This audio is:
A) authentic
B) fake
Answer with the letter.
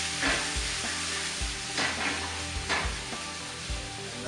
A